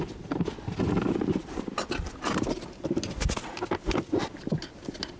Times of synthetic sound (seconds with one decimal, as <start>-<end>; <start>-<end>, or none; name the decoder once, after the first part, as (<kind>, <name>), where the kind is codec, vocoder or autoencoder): none